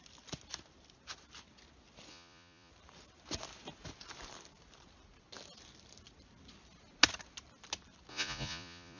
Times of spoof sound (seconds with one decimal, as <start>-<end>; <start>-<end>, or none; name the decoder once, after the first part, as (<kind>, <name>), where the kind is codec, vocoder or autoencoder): 2.1-2.7 (vocoder, Vocos); 8.1-9.0